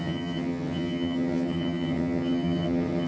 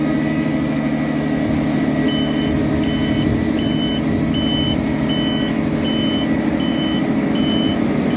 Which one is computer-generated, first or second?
first